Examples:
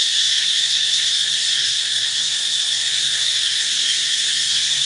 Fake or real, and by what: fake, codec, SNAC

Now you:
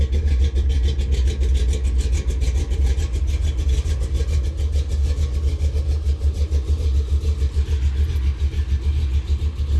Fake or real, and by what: real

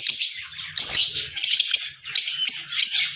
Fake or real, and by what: real